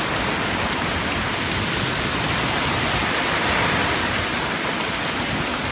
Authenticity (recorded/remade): recorded